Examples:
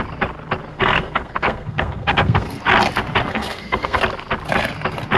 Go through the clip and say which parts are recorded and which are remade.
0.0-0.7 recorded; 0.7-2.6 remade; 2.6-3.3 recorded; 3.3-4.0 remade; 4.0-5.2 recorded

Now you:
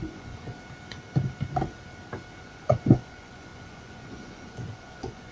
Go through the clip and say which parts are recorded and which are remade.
0.0-0.5 remade; 0.5-2.4 recorded; 2.4-5.3 remade